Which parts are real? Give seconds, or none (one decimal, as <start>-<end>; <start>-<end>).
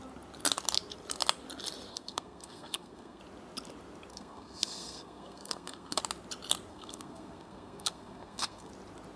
0.0-1.9; 3.2-4.1; 6.0-6.7; 8.7-9.2